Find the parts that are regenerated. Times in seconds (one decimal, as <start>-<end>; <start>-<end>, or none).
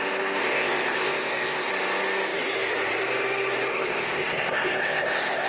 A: 0.4-1.7; 3.7-5.5